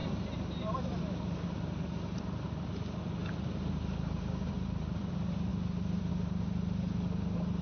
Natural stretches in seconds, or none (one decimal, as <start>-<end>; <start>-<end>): 0.0-7.6

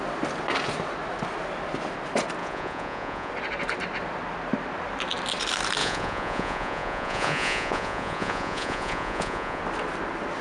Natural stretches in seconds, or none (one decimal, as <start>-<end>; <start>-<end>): 0.0-2.4; 3.3-5.8; 9.6-10.4

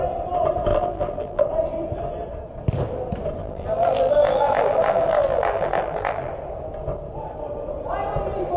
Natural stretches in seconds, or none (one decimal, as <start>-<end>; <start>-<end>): 0.0-0.7; 1.5-3.4; 6.3-8.6